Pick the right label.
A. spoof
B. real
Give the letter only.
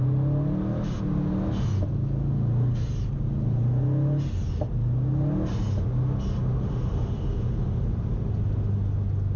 B